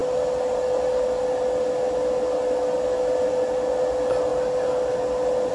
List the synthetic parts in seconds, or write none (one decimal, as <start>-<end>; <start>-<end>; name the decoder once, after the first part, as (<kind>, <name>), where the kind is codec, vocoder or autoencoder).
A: none